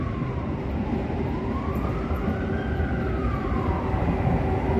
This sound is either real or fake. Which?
real